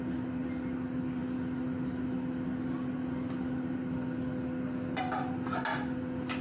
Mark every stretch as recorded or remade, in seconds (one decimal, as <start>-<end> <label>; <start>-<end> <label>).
0.0-6.4 recorded